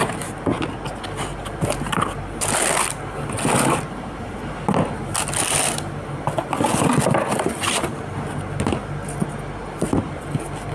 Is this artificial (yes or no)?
no